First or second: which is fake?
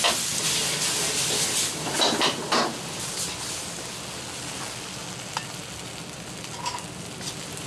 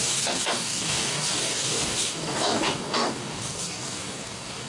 second